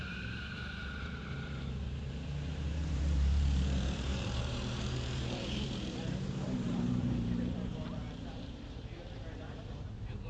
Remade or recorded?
remade